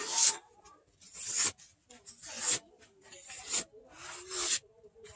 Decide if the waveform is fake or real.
real